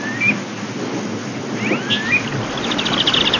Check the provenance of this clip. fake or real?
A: real